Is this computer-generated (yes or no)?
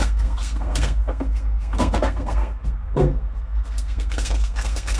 yes